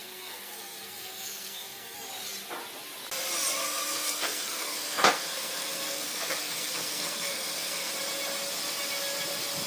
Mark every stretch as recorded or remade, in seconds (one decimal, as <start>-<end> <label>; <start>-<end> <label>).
0.0-2.1 remade; 2.1-3.6 recorded; 3.6-7.9 remade; 7.9-9.7 recorded